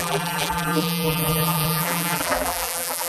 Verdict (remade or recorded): remade